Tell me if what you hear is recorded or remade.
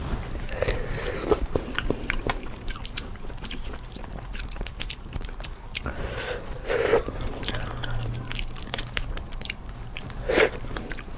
remade